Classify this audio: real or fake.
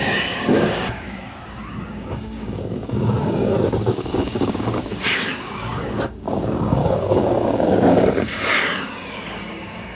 fake